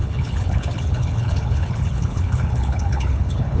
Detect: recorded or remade remade